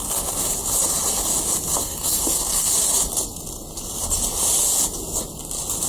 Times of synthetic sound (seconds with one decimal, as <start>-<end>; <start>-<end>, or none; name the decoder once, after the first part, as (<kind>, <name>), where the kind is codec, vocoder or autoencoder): 1.8-2.7 (codec, SNAC)